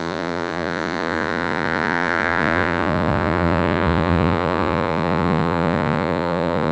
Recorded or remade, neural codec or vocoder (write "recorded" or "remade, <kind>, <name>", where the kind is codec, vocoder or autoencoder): remade, vocoder, Vocos